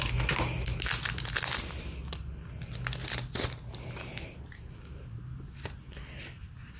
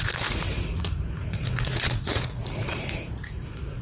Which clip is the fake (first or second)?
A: second